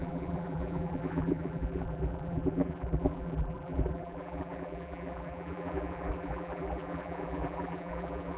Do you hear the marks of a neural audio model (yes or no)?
yes